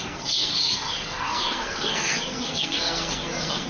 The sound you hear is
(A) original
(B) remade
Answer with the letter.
B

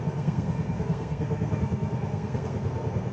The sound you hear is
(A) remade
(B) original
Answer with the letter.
A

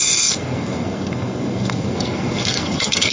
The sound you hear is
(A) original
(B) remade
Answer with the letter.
B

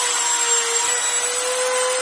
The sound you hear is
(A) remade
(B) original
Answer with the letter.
B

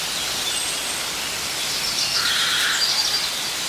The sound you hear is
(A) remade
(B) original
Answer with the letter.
B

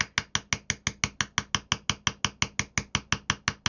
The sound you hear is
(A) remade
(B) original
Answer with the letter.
B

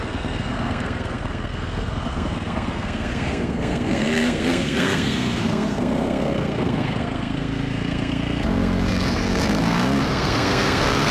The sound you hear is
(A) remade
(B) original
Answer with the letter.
A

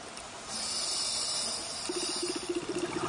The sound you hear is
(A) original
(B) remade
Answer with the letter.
A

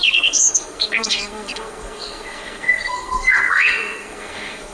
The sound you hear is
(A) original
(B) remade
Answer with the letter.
B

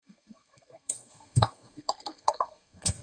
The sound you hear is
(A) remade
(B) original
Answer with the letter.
A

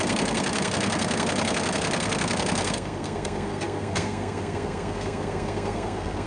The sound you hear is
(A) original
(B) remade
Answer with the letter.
B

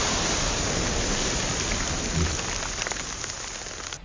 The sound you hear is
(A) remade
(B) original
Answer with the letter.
B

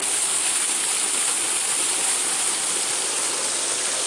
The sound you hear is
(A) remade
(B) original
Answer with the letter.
B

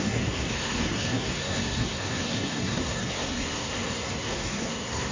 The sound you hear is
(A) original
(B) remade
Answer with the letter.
B